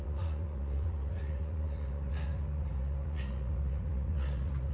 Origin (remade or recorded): remade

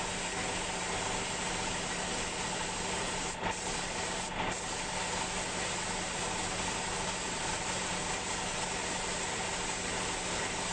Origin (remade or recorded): recorded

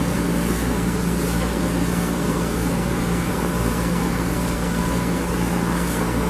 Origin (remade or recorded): remade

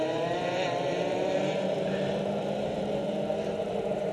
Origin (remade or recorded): remade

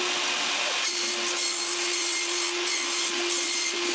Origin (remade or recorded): recorded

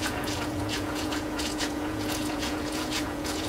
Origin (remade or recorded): remade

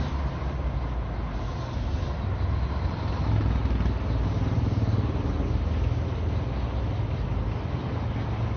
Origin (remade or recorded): recorded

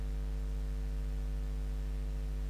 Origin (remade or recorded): recorded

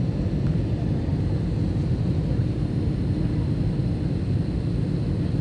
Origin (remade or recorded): recorded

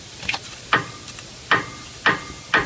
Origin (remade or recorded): recorded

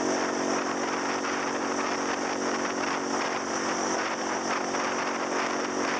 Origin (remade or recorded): recorded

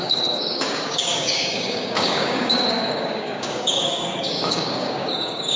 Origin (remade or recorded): remade